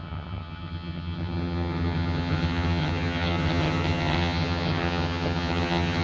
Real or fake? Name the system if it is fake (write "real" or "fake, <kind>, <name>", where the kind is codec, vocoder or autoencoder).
fake, vocoder, HiFi-GAN